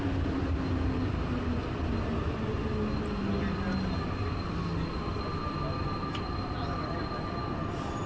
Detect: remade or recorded recorded